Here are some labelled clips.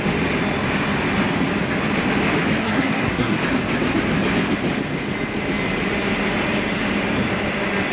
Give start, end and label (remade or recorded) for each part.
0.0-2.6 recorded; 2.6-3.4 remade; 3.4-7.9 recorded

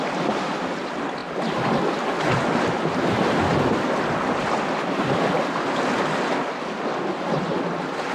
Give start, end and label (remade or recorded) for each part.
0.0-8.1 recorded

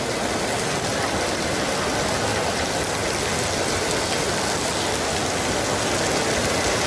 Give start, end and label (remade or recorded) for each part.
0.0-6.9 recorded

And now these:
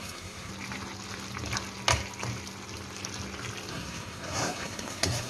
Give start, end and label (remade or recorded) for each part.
0.0-0.5 remade; 0.5-3.7 recorded; 3.7-5.3 remade

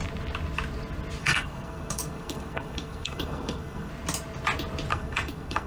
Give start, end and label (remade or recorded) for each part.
0.0-1.2 recorded; 1.2-3.9 remade; 3.9-4.9 recorded; 4.9-5.7 remade

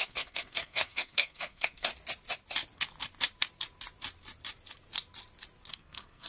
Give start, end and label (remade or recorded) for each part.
0.0-1.9 remade; 1.9-5.7 recorded; 5.7-6.3 remade

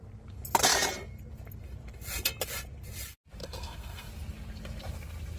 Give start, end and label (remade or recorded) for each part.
0.0-3.4 recorded; 3.4-4.1 remade; 4.1-5.4 recorded

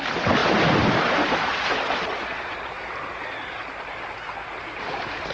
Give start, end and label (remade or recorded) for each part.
0.0-5.3 recorded